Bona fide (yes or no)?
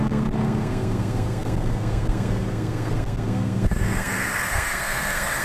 no